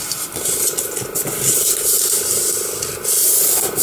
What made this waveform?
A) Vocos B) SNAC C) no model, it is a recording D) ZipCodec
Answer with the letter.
C